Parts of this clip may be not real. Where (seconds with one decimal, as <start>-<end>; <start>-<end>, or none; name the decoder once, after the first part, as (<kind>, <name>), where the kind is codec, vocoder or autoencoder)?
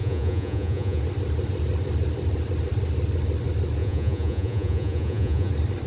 0.0-1.0 (vocoder, Vocos); 3.8-5.5